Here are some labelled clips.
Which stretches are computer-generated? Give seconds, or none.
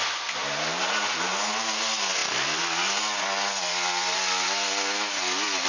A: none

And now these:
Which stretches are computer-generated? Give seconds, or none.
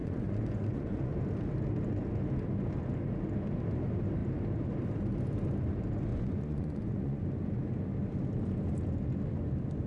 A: 0.0-1.2 (vocoder, Vocos); 6.1-7.2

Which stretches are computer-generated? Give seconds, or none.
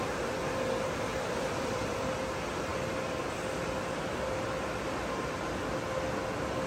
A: 1.1-2.1 (vocoder, BigVGAN v2); 2.7-3.2